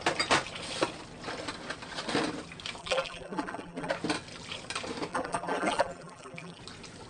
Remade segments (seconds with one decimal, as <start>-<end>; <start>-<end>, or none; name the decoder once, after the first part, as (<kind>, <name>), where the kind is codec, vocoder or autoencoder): 2.8-3.9 (vocoder, BigVGAN v2); 5.1-6.6